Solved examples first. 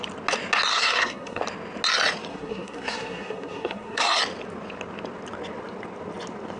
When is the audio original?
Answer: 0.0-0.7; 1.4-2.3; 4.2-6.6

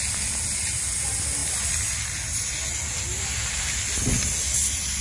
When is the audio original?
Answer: 0.0-5.0

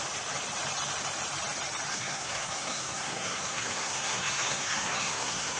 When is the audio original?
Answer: 0.0-1.9

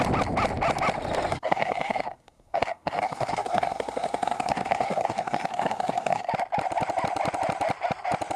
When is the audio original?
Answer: 0.0-1.3; 6.3-8.4

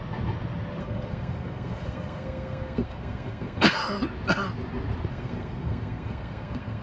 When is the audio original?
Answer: 0.0-0.8; 3.8-5.1